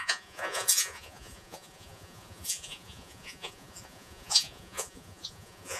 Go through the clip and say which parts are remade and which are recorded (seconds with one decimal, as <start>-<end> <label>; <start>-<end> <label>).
0.0-5.8 remade